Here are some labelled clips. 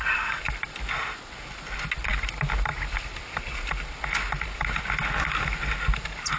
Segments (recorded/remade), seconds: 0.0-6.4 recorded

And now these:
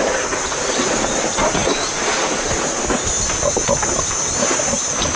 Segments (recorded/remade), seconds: 0.0-5.2 recorded

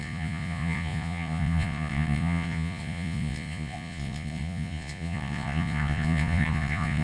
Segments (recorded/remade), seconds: 0.0-7.0 remade

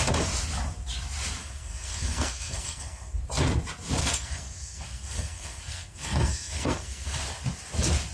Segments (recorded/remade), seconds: 0.0-1.4 recorded; 1.4-3.2 remade; 3.2-4.0 recorded; 4.0-7.2 remade; 7.2-8.1 recorded